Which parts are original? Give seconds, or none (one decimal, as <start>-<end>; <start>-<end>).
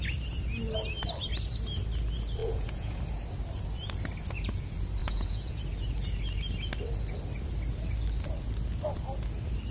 0.0-2.4; 3.0-5.0; 5.6-9.7